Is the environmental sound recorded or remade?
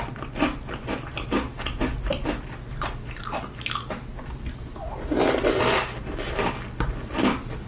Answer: recorded